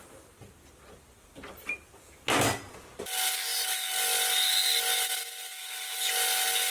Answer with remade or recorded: recorded